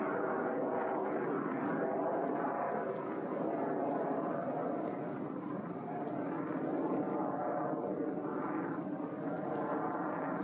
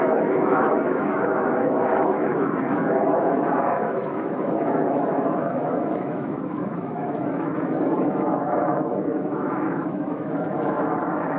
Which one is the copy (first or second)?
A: second